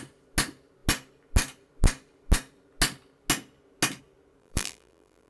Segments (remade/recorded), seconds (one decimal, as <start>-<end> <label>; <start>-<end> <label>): 0.0-4.4 recorded; 4.4-5.3 remade